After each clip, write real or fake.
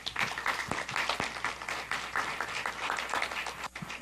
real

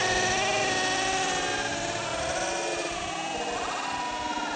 real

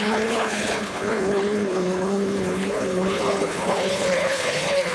fake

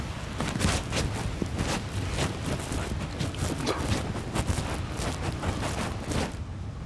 real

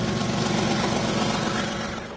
real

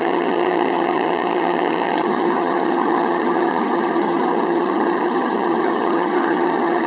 fake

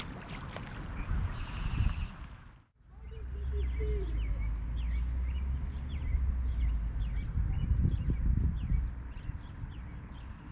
real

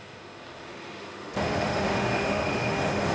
fake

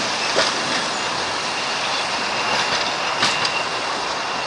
real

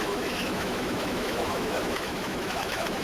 fake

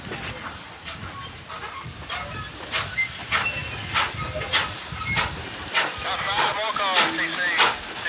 real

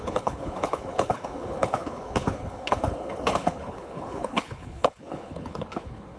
fake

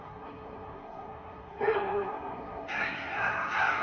fake